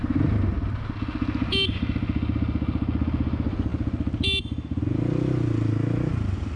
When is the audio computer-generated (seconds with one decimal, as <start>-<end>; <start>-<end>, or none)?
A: none